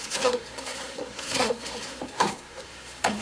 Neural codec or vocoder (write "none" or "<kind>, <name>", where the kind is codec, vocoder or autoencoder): codec, SNAC